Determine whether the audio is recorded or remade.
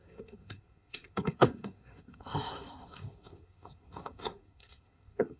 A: remade